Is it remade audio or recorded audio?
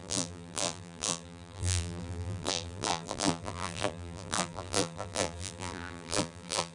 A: remade